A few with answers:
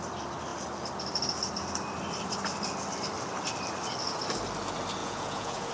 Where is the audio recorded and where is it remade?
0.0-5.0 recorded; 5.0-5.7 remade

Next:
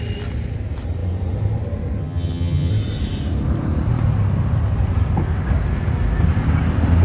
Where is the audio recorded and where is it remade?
0.0-2.0 recorded; 2.0-2.7 remade; 2.7-7.0 recorded

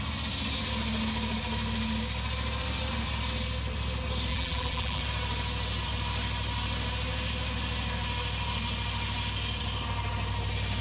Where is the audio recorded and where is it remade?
0.0-4.3 recorded; 4.3-5.0 remade; 5.0-10.8 recorded

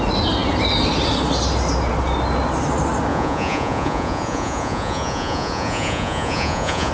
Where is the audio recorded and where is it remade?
0.0-3.1 recorded; 3.1-6.9 remade